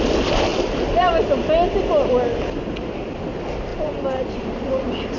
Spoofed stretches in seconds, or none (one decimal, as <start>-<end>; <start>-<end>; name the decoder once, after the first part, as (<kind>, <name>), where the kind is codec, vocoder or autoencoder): 0.5-1.1 (vocoder, BigVGAN v2); 3.7-4.7